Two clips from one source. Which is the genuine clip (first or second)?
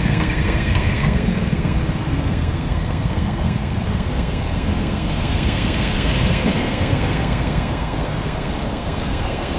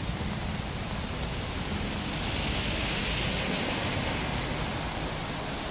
second